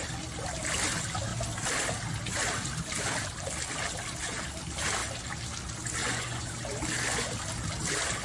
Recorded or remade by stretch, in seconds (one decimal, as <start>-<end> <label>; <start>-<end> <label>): 0.0-6.0 recorded; 6.0-6.5 remade; 6.5-8.2 recorded